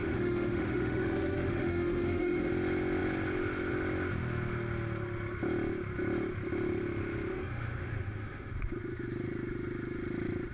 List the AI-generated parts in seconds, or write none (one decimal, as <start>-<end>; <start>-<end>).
0.0-2.5; 7.3-8.5